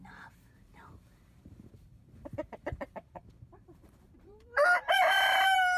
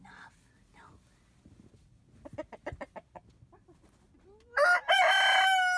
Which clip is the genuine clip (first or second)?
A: second